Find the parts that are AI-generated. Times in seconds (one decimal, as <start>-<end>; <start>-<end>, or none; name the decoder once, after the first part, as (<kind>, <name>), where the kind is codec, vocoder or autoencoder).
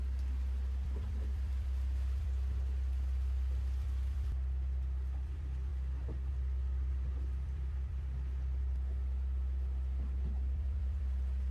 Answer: 0.0-5.7 (vocoder, BigVGAN v2); 6.3-11.5